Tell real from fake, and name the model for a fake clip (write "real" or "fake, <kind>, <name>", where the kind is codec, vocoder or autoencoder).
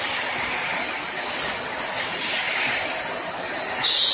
real